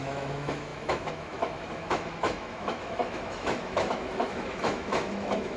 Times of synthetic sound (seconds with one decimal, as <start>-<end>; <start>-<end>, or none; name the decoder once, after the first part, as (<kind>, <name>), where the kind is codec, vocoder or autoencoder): 0.0-5.6 (autoencoder, DAC-VAE)